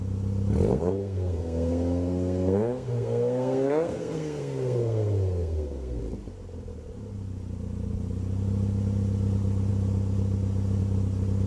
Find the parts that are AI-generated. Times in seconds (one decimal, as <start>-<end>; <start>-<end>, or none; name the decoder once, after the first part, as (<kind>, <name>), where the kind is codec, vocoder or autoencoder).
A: 0.7-6.0 (codec, SNAC)